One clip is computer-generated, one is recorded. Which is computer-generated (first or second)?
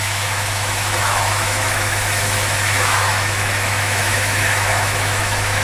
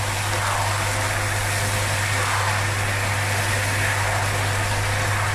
first